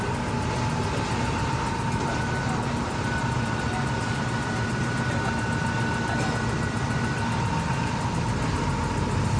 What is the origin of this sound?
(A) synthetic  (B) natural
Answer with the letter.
B